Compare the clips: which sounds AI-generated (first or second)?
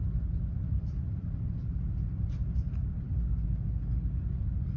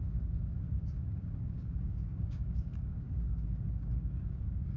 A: second